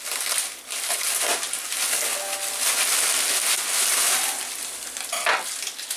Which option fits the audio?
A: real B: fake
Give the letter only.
A